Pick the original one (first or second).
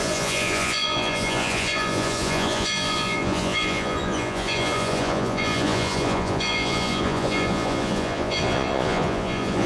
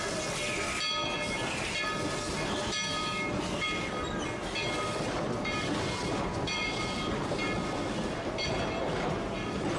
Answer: second